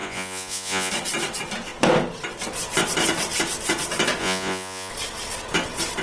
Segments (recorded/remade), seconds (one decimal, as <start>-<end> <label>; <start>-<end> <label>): 0.0-0.9 remade; 0.9-4.2 recorded; 4.2-4.9 remade; 4.9-6.0 recorded